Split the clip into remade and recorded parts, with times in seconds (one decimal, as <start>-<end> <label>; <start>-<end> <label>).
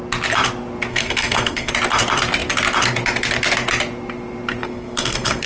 0.0-0.9 recorded; 0.9-1.7 remade; 1.7-4.6 recorded; 4.6-5.5 remade